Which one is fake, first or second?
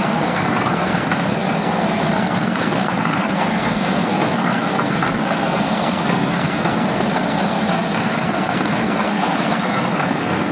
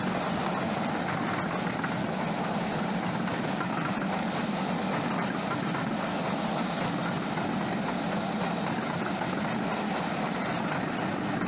first